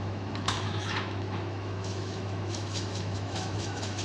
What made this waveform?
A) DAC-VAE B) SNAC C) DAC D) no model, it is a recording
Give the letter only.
A